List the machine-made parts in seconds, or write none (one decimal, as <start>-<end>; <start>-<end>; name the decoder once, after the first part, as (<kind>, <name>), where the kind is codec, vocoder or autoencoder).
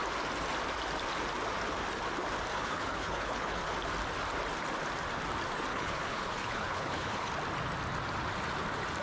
2.5-3.6 (codec, HILCodec); 5.7-7.3